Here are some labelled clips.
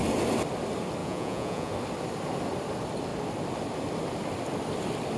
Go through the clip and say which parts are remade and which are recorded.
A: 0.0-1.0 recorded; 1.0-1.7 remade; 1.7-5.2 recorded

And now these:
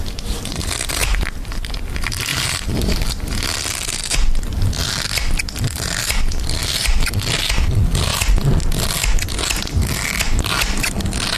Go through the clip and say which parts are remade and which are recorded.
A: 0.0-2.3 recorded; 2.3-3.1 remade; 3.1-6.6 recorded; 6.6-7.1 remade; 7.1-11.4 recorded

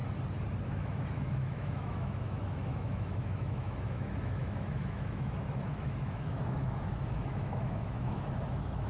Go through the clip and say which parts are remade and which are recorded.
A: 0.0-0.6 recorded; 0.6-8.9 remade

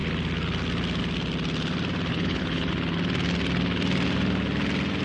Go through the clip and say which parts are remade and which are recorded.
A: 0.0-2.1 recorded; 2.1-2.7 remade; 2.7-5.0 recorded

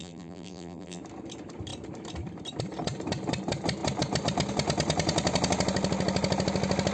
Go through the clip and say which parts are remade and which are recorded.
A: 0.0-1.0 remade; 1.0-6.9 recorded